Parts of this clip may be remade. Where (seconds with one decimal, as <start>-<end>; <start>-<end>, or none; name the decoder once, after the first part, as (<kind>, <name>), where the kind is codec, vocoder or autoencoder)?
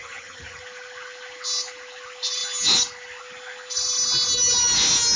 0.0-0.6 (vocoder, HiFi-GAN)